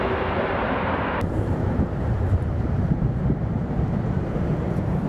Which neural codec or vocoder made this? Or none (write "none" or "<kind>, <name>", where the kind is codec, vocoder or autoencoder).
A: vocoder, BigVGAN v2